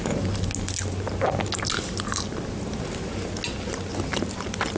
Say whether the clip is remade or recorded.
recorded